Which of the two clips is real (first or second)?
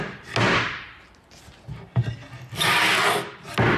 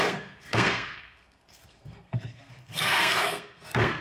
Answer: first